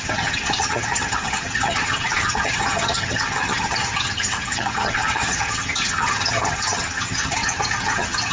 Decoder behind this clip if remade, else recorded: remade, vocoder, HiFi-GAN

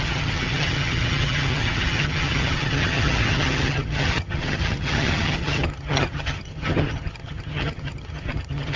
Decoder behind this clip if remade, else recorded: remade, vocoder, HiFi-GAN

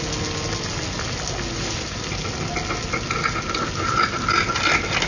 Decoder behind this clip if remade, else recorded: recorded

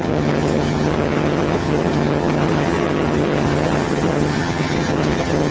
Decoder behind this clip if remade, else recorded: remade, vocoder, HiFi-GAN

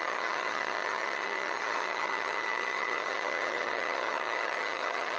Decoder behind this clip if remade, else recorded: remade, vocoder, HiFi-GAN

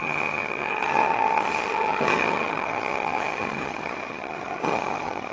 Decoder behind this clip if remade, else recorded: remade, vocoder, HiFi-GAN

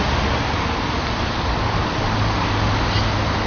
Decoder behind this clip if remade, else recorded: recorded